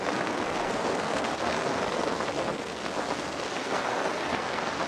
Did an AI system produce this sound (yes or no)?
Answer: yes